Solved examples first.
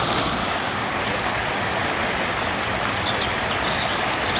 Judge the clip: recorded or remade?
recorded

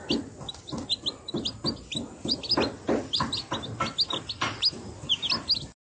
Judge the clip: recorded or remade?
recorded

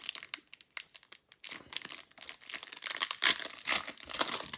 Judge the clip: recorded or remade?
recorded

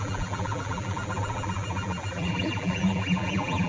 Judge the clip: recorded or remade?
remade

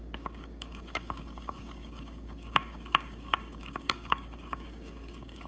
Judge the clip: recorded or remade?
remade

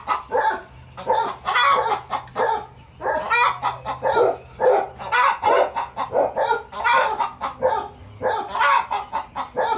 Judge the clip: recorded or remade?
recorded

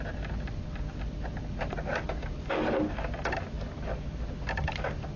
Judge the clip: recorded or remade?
recorded